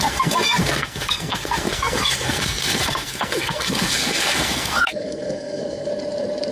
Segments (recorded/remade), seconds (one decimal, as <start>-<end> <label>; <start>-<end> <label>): 0.0-5.9 remade; 5.9-6.5 recorded